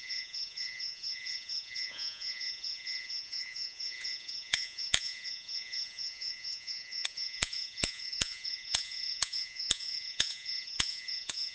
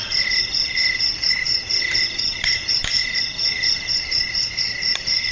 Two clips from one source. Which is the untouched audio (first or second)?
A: second